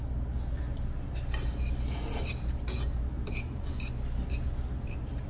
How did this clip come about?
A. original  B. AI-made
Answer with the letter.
A